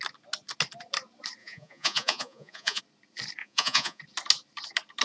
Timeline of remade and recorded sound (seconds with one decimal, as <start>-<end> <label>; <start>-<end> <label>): 0.0-1.4 recorded; 1.4-2.8 remade; 2.8-3.4 recorded; 3.4-4.0 remade; 4.0-5.0 recorded